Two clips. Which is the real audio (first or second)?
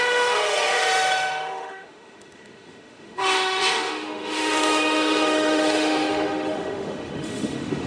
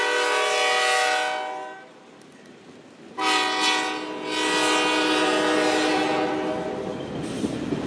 second